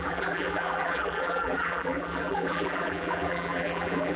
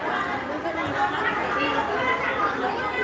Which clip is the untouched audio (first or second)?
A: second